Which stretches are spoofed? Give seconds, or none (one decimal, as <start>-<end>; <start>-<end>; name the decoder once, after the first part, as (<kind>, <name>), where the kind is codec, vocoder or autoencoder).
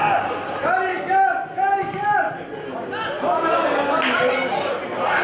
none